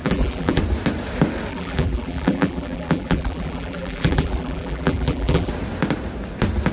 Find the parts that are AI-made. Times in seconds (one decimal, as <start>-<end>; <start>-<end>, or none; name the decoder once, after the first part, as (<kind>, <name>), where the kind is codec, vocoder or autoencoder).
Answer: 0.0-0.6 (vocoder, BigVGAN v2); 1.5-5.5